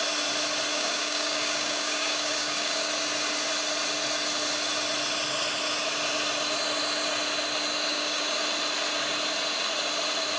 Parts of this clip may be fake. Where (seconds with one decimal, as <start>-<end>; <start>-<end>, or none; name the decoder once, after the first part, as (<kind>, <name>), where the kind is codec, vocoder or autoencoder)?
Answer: 0.7-2.9 (codec, DAC); 7.9-8.4